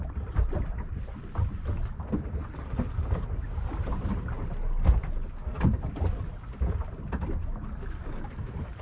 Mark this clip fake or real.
real